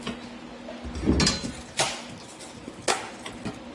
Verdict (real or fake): real